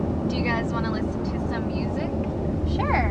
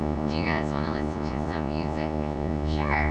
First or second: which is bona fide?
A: first